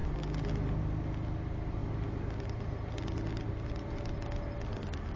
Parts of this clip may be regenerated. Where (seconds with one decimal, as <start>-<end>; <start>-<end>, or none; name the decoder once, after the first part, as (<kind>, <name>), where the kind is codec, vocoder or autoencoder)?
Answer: none